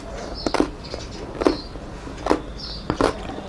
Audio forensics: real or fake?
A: real